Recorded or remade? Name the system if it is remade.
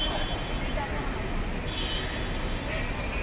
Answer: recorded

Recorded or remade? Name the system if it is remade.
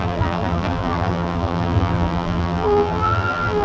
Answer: remade, vocoder, BigVGAN v2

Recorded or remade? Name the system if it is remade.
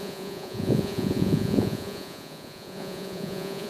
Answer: remade, vocoder, Vocos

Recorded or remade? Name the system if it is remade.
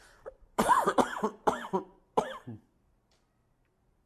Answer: remade, vocoder, BigVGAN v2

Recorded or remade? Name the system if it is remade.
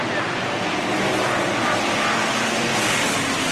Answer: recorded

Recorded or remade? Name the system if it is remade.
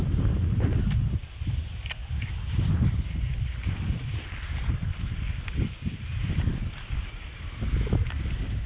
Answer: recorded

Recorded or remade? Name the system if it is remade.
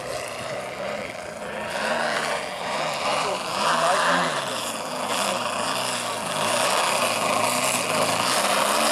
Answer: remade, vocoder, BigVGAN v2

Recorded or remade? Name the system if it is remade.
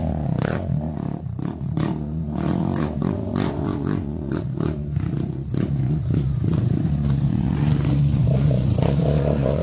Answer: remade, vocoder, Vocos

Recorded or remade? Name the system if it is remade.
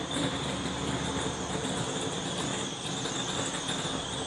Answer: recorded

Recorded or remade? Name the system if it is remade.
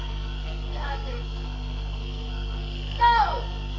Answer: remade, codec, SNAC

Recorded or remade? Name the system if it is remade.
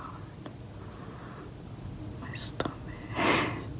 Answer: recorded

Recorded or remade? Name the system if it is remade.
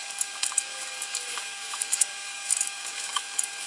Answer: remade, codec, DAC